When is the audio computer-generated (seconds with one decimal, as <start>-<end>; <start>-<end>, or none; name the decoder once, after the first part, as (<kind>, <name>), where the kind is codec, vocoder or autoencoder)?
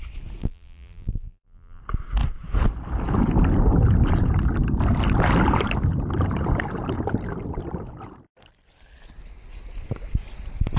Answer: 0.4-1.8 (vocoder, BigVGAN v2)